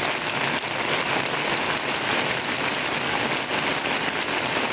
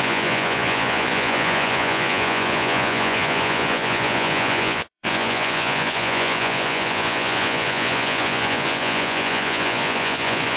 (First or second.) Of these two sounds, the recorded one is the first